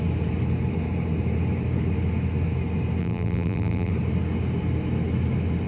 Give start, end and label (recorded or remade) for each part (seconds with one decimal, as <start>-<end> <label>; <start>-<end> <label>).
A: 0.0-3.0 recorded; 3.0-3.9 remade; 3.9-5.7 recorded